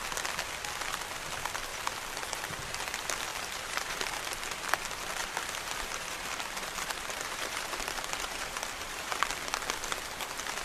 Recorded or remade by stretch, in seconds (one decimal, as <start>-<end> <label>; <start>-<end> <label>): 0.0-1.7 recorded; 1.7-2.8 remade; 2.8-3.3 recorded; 3.3-4.2 remade; 4.2-5.2 recorded; 5.2-9.3 remade; 9.3-10.6 recorded